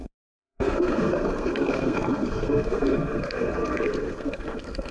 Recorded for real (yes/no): no